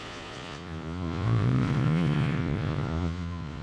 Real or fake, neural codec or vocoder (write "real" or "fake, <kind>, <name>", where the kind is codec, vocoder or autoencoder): fake, vocoder, Vocos